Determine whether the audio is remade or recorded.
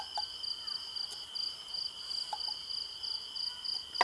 recorded